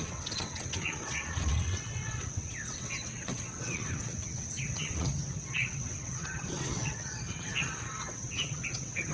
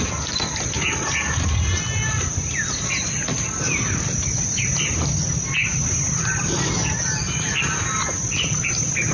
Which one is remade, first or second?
first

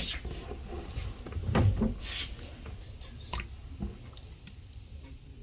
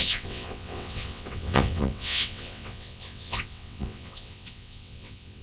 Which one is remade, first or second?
second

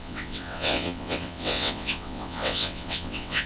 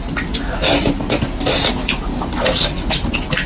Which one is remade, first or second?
first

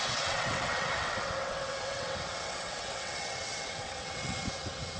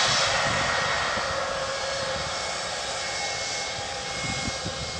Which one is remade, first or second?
first